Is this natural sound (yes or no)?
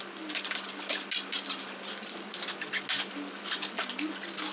yes